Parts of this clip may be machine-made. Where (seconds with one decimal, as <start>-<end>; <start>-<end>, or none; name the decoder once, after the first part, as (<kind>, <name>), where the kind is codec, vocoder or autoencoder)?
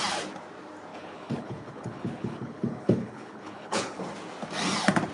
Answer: 0.9-4.0 (codec, HILCodec)